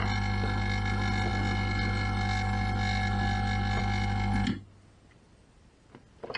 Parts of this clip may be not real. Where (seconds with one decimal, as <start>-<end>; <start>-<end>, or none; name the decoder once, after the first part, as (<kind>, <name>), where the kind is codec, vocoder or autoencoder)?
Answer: none